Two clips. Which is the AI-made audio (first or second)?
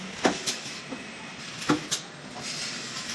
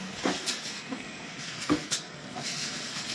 second